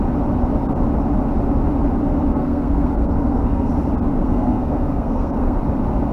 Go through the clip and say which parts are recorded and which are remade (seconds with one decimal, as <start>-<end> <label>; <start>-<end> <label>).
0.0-2.3 recorded; 2.3-3.7 remade; 3.7-4.2 recorded; 4.2-5.6 remade; 5.6-6.1 recorded